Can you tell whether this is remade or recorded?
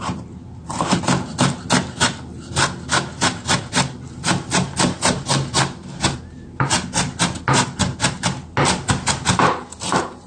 recorded